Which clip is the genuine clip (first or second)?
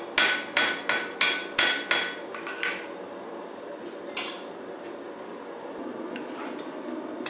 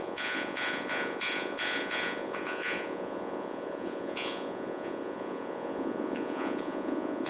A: first